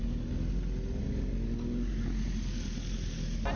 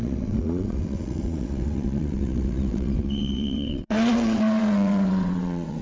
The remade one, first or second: second